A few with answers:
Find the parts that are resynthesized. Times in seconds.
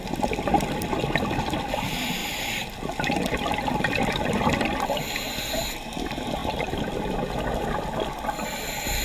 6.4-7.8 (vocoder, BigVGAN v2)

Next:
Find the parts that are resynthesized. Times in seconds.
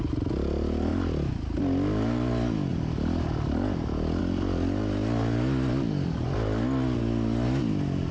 0.9-1.6 (vocoder, BigVGAN v2)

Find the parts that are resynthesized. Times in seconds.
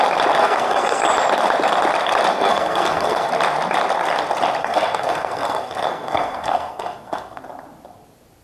0.4-1.0 (codec, SNAC); 2.3-3.3; 4.6-7.4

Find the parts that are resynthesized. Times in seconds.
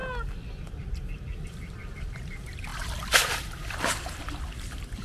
0.6-2.7 (vocoder, BigVGAN v2); 4.2-5.0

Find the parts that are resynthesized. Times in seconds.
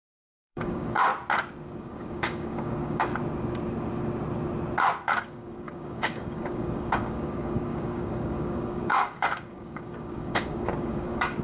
0.0-1.1 (codec, DAC); 1.8-3.1; 5.2-11.4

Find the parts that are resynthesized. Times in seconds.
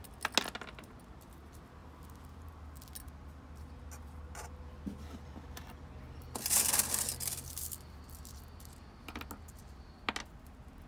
none